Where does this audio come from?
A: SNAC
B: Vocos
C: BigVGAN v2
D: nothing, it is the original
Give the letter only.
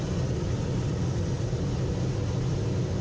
D